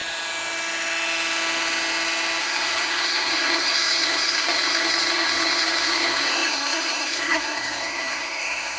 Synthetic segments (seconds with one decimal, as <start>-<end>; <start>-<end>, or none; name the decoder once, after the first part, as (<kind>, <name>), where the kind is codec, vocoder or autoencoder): 2.4-8.8 (codec, SNAC)